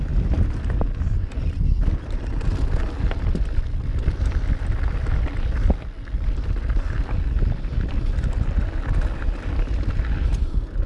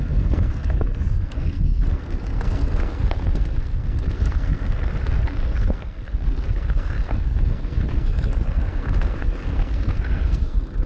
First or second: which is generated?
second